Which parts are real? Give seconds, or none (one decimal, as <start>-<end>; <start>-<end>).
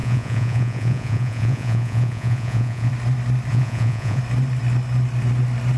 2.9-3.5; 4.2-5.8